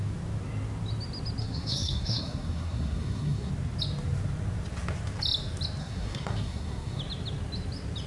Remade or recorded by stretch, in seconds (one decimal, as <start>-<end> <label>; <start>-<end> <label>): 0.0-1.4 recorded; 1.4-3.5 remade; 3.5-5.8 recorded; 5.8-7.0 remade; 7.0-8.1 recorded